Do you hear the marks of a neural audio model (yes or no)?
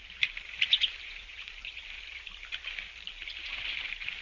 no